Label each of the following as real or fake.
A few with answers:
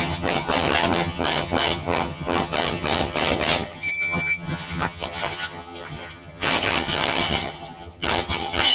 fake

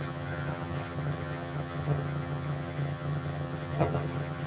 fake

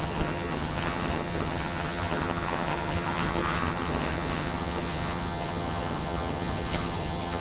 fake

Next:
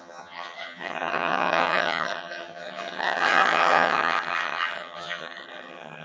fake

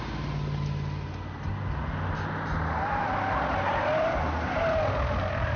real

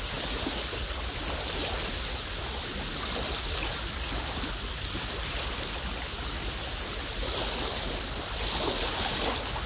real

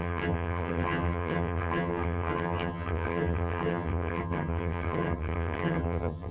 fake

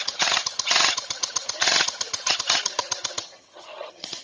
fake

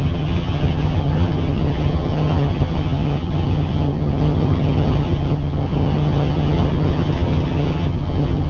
fake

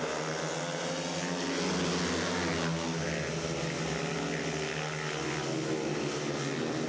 real